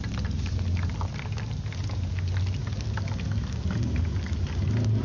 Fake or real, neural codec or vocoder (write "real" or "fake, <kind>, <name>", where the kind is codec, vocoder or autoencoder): real